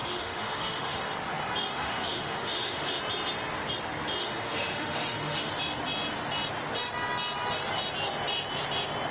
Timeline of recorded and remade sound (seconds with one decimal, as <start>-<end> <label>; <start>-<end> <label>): 0.0-1.1 remade; 1.1-1.7 recorded; 1.7-3.0 remade; 3.0-4.2 recorded; 4.2-5.5 remade; 5.5-9.1 recorded